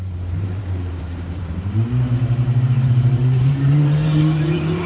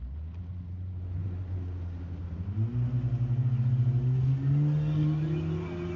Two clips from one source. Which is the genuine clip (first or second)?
second